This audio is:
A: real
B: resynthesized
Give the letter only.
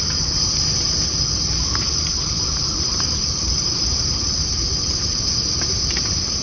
B